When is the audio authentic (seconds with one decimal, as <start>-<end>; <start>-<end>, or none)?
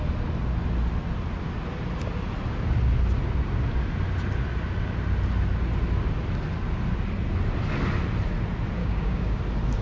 0.0-8.8; 9.4-9.8